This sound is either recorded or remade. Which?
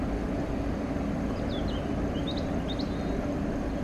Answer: recorded